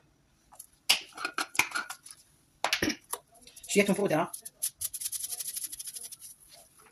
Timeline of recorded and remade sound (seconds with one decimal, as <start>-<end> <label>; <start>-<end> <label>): 0.0-6.9 recorded